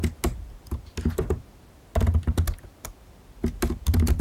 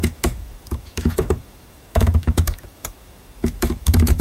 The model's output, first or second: second